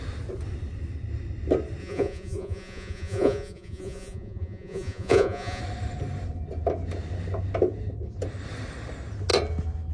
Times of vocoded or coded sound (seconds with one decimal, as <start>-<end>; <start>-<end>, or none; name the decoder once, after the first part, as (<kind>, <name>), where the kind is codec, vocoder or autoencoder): 1.8-5.6 (vocoder, Vocos)